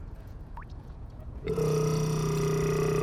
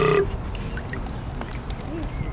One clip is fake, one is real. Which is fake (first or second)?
first